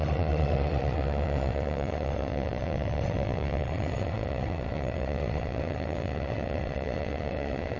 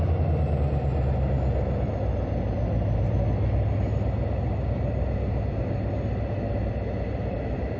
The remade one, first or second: first